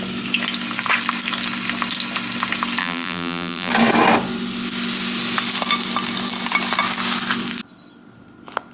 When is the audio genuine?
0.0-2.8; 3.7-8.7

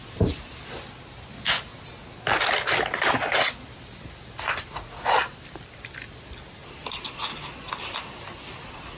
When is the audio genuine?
0.0-9.0

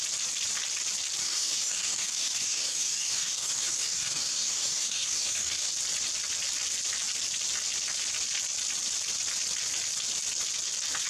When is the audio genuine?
0.0-1.2; 5.7-11.1

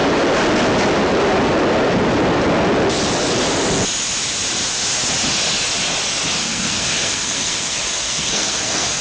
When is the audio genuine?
0.0-6.4

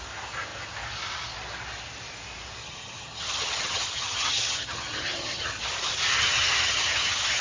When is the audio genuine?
0.0-2.6; 5.5-6.1

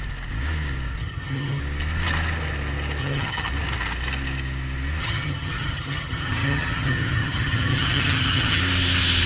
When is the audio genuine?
0.0-1.0; 1.6-3.0; 3.5-5.0; 8.6-9.3